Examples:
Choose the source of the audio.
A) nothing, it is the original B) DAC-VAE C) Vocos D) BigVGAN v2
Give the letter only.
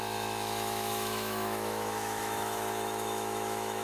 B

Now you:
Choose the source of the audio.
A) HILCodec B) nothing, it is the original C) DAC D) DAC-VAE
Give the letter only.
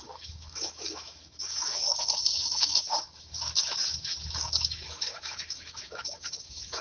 D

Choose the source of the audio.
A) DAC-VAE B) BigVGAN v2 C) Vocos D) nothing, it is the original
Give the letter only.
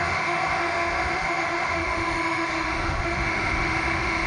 A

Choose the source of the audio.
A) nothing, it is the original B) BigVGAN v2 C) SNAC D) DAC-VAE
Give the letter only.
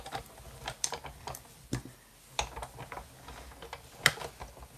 A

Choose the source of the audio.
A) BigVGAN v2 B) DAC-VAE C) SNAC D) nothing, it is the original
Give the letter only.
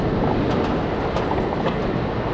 D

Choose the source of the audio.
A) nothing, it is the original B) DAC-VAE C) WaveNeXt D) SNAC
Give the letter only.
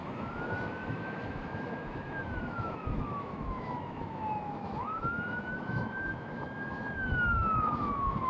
B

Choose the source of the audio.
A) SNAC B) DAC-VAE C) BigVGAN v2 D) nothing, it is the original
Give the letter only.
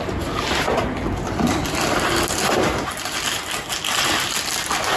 D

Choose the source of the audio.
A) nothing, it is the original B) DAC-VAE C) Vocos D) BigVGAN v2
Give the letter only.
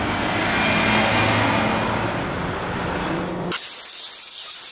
A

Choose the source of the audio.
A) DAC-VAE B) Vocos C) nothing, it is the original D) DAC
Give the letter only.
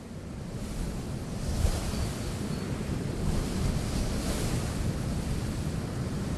C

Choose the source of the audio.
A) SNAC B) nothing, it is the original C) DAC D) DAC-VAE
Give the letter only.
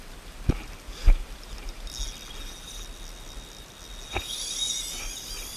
B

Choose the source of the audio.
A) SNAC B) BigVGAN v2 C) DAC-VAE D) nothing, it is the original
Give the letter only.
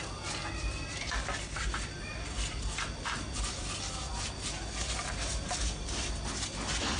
D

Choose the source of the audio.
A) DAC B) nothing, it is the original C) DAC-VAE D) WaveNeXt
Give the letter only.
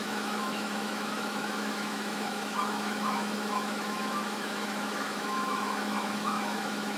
C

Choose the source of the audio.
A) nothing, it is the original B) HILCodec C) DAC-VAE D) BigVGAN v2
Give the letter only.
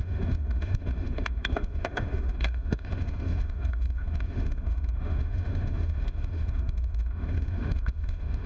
C